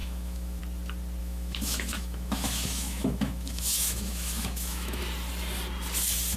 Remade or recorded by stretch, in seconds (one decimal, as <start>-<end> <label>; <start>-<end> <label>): 0.0-0.6 remade; 0.6-1.2 recorded; 1.2-5.0 remade; 5.0-6.4 recorded